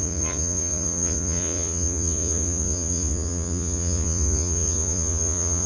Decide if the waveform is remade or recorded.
remade